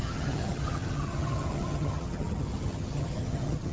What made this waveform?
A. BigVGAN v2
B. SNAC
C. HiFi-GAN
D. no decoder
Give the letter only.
C